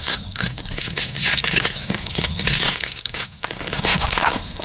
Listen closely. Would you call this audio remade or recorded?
remade